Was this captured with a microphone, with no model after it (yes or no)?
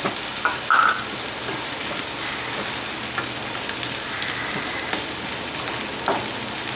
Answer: yes